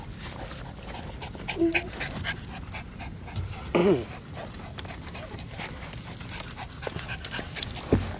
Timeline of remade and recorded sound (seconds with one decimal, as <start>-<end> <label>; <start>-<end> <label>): 0.0-8.2 recorded